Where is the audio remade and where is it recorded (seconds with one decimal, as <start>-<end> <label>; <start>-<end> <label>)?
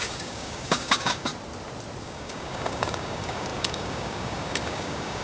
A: 0.0-1.3 remade; 1.3-2.0 recorded; 2.0-5.2 remade